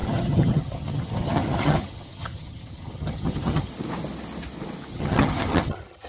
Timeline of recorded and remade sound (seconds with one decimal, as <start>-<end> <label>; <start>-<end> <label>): 0.0-3.7 remade; 3.7-4.9 recorded; 4.9-6.1 remade

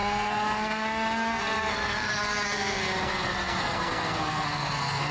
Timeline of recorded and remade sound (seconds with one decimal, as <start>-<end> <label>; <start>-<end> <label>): 0.0-5.1 remade

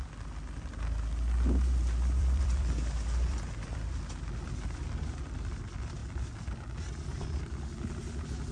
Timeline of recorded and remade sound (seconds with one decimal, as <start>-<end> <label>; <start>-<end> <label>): 0.0-2.2 recorded; 2.2-4.5 remade; 4.5-8.5 recorded

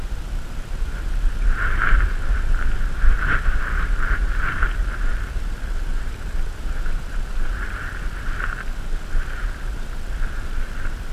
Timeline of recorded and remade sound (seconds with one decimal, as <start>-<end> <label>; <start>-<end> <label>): 0.0-11.1 recorded

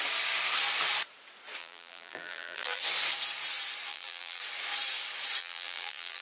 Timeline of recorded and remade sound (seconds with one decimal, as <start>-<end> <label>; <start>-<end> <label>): 0.0-1.6 recorded; 1.6-2.8 remade; 2.8-3.9 recorded; 3.9-4.4 remade; 4.4-5.4 recorded; 5.4-6.2 remade